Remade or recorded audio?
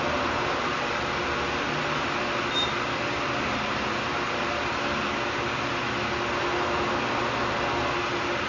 recorded